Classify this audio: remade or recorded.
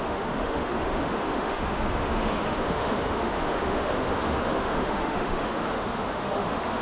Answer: remade